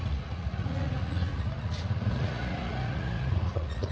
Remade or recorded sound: remade